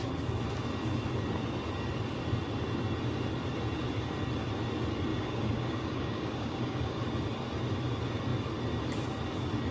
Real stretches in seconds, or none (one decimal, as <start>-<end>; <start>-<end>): 0.0-5.1; 7.0-9.7